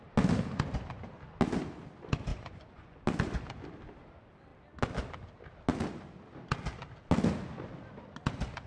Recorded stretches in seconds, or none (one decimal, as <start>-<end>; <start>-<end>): 0.0-2.3; 3.0-8.7